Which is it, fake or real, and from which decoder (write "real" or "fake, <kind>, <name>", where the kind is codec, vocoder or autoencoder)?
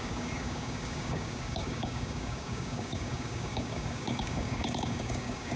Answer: fake, codec, DAC